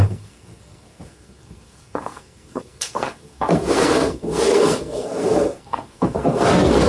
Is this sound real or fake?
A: fake